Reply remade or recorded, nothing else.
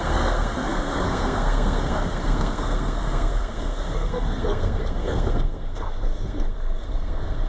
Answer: remade